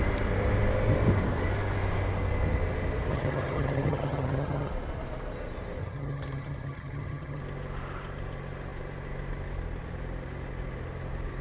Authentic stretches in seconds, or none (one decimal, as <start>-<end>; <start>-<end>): 0.0-3.1; 4.7-5.8; 7.4-11.4